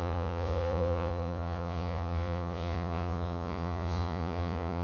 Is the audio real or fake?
fake